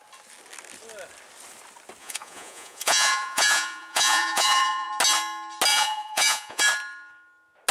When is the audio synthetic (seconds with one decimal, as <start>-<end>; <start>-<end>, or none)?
2.0-4.9; 5.7-6.6